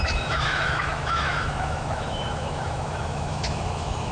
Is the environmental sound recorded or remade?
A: remade